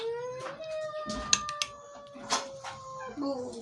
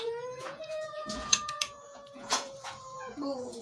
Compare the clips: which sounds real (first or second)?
first